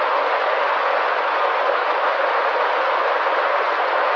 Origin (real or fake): fake